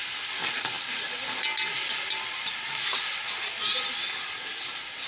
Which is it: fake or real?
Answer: real